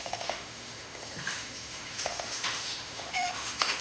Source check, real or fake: fake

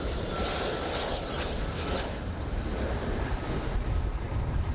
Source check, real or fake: real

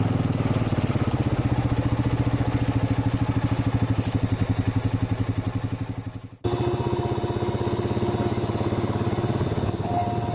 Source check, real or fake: real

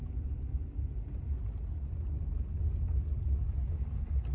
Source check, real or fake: real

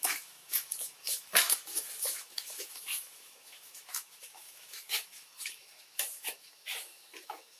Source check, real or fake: fake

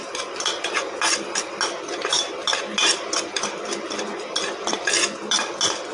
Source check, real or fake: real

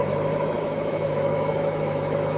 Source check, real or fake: fake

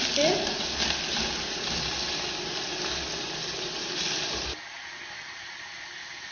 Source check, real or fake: real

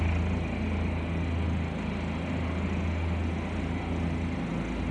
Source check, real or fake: real